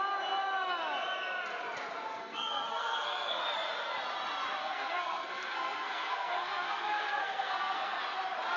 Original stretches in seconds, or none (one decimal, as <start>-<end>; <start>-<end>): 0.0-2.1; 3.4-4.6; 8.0-8.6